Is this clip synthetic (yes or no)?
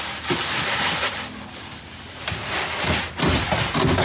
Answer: no